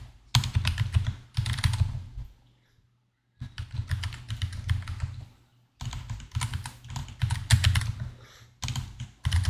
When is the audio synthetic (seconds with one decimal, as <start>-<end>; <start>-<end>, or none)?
none